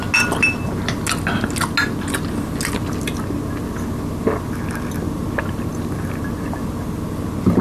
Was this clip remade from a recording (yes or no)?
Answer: no